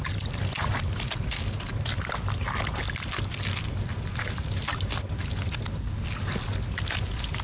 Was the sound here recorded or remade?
recorded